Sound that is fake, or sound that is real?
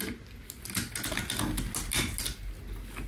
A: real